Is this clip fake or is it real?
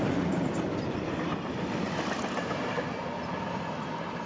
real